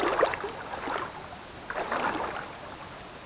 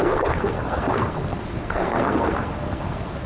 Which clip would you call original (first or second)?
first